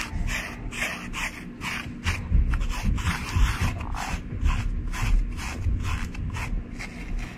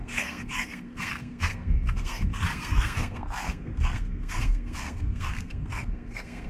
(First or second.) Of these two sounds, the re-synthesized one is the second